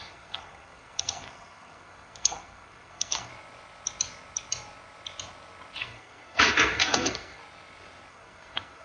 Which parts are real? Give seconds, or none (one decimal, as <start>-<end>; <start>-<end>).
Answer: 3.3-5.8; 7.4-8.1

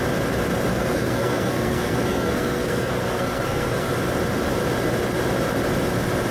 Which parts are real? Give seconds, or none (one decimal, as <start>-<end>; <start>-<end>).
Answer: 0.0-0.7; 3.9-6.3